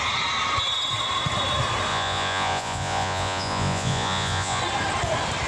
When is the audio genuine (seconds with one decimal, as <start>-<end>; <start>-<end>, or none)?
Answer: 0.0-1.9; 4.6-5.5

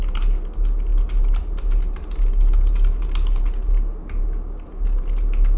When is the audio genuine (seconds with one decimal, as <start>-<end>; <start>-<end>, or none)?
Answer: 0.0-5.6

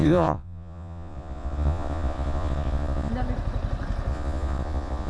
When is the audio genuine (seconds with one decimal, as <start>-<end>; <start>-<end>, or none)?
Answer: 3.1-4.1

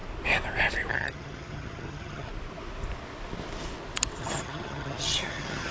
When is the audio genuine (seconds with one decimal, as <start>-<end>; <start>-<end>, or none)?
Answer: 0.0-0.9; 2.3-4.2

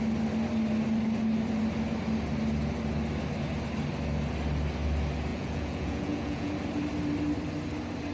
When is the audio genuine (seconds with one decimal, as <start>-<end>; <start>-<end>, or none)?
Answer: 0.0-5.3; 6.5-8.1

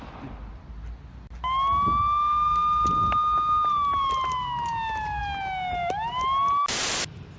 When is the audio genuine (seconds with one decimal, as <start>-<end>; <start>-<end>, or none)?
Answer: 0.0-7.4

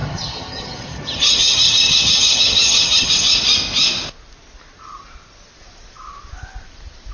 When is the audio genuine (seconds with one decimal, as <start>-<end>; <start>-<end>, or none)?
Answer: 3.1-7.1

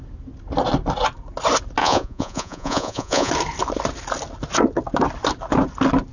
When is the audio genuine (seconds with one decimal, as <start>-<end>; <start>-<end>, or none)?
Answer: 0.0-1.8; 3.3-6.1